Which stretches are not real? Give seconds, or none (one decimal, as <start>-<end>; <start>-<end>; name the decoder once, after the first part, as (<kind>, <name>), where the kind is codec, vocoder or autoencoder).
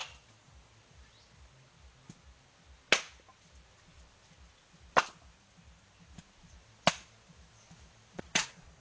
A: none